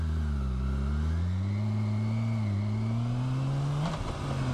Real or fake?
real